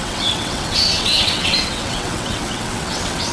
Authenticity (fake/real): fake